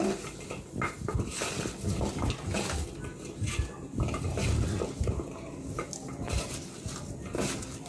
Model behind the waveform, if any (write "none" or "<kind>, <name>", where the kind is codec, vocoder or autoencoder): none